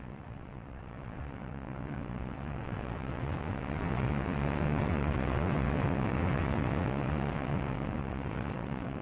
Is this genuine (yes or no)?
no